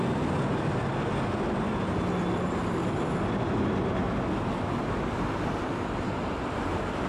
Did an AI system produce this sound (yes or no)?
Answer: no